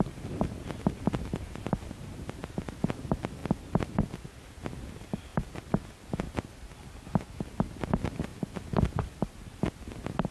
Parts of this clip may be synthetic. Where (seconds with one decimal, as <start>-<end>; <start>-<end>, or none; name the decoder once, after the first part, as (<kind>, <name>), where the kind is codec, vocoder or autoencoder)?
none